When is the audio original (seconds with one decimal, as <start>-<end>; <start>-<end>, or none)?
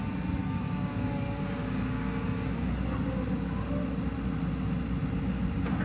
0.0-0.4; 0.9-1.6; 2.7-5.8